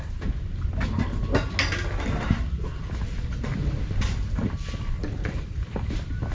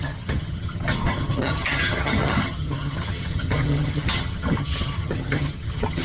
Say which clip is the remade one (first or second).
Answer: second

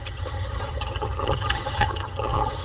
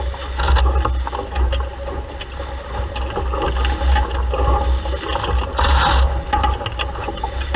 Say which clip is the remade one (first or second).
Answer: first